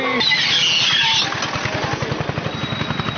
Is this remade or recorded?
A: recorded